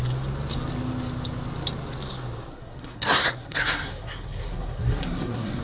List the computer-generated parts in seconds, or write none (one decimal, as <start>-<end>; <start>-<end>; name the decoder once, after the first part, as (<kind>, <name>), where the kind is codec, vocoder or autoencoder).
2.5-5.6 (codec, SNAC)